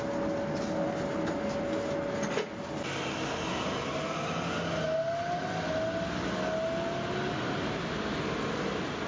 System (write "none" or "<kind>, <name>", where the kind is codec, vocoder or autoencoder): none